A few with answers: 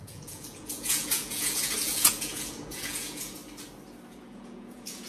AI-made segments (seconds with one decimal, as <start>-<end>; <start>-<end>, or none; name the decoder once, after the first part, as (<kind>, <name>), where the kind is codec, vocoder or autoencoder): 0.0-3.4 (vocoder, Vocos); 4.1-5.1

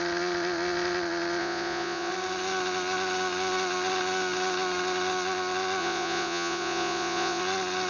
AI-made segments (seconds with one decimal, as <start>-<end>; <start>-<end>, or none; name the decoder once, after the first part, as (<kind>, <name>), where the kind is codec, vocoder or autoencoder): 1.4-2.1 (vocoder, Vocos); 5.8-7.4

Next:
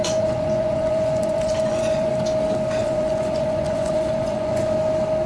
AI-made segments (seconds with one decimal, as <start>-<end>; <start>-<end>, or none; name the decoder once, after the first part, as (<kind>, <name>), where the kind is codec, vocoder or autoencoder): 0.0-2.1 (vocoder, Vocos); 2.8-4.7

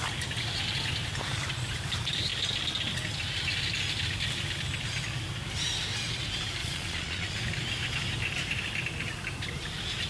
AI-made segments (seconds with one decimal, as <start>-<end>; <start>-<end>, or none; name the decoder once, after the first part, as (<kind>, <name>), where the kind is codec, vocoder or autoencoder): 6.6-7.4 (vocoder, Vocos)

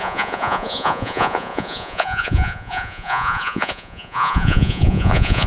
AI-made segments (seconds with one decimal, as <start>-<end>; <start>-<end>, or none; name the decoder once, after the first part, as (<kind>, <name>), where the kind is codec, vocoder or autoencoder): 0.0-5.5 (vocoder, Vocos)